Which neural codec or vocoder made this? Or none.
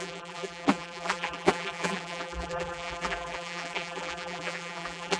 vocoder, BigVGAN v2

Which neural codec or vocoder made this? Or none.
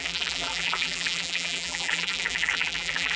vocoder, BigVGAN v2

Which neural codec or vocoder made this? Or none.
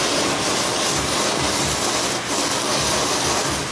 none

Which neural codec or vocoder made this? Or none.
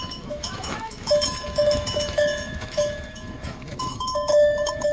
autoencoder, DAC-VAE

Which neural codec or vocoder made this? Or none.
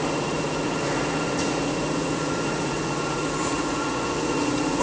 vocoder, Vocos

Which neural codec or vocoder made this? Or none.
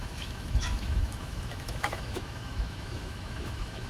autoencoder, DAC-VAE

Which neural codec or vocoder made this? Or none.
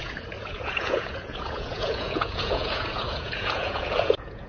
vocoder, Vocos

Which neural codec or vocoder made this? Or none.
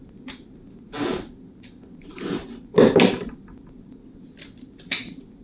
none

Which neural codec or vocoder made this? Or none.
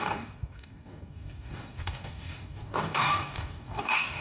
codec, DAC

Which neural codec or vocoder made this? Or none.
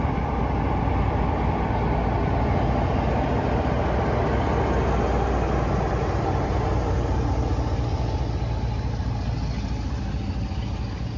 none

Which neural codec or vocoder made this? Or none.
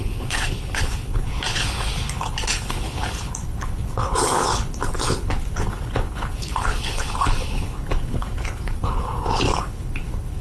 codec, HILCodec